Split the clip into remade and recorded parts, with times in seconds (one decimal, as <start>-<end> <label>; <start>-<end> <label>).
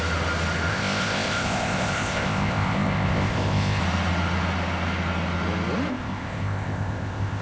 0.0-0.7 recorded; 0.7-3.8 remade; 3.8-5.9 recorded; 5.9-7.4 remade